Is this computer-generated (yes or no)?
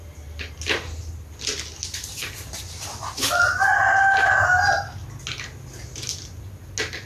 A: no